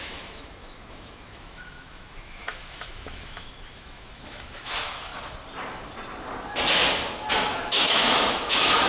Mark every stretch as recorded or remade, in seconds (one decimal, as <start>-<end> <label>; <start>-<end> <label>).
0.0-5.1 remade; 5.1-7.3 recorded; 7.3-8.9 remade